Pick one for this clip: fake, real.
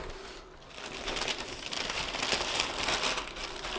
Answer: real